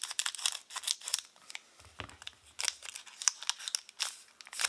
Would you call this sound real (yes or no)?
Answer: yes